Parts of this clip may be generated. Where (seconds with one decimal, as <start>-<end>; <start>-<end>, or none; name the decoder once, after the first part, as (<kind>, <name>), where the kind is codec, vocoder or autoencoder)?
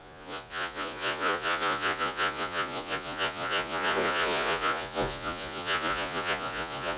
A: 0.0-7.0 (vocoder, Vocos)